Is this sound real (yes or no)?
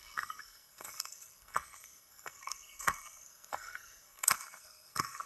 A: no